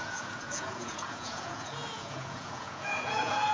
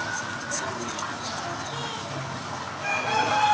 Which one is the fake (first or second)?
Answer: first